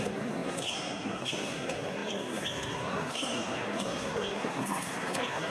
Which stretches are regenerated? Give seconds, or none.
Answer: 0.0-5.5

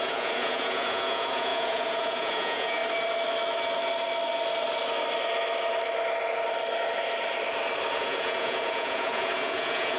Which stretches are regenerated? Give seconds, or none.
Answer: 0.0-2.8; 7.9-10.0

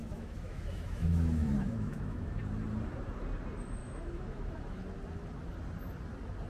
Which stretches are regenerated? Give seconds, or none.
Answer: 0.0-2.4; 3.8-4.8

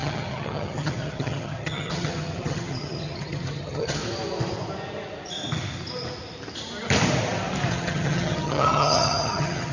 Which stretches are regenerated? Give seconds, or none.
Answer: 0.0-4.0; 7.7-9.7

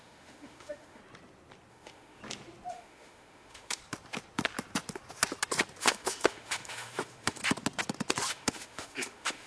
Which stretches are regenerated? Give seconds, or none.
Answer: 0.0-1.0; 1.7-2.2; 2.7-3.8; 5.8-7.4; 8.3-9.5